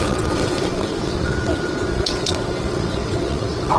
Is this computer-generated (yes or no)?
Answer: yes